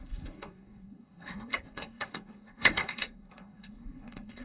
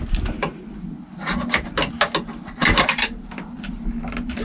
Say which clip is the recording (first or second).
second